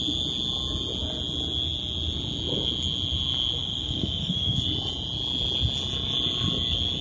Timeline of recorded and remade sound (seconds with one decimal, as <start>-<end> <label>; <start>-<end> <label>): 0.0-3.6 recorded; 3.6-4.6 remade; 4.6-7.0 recorded